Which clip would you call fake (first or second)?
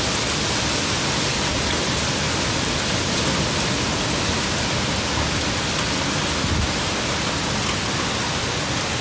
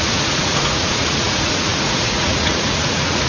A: second